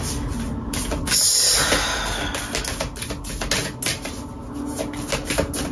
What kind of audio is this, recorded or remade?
recorded